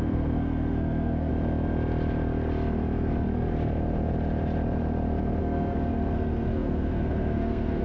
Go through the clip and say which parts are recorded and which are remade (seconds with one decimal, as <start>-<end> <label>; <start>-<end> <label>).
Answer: 0.0-1.3 remade; 1.3-5.4 recorded; 5.4-7.8 remade